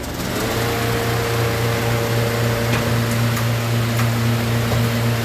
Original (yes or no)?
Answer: yes